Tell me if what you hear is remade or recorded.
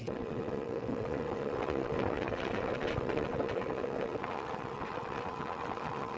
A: remade